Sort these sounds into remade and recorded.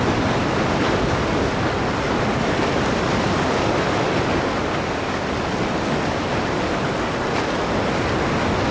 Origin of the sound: recorded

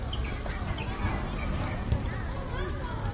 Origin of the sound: recorded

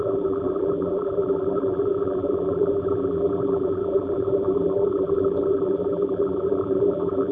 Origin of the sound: remade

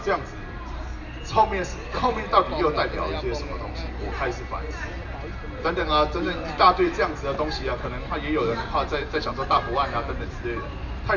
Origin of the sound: recorded